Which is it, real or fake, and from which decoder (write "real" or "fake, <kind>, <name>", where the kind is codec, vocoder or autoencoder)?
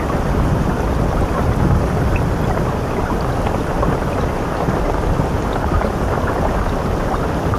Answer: real